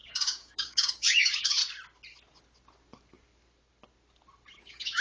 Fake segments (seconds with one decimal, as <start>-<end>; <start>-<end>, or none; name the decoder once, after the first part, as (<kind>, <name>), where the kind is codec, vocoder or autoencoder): 0.0-1.6 (codec, DAC); 4.6-5.0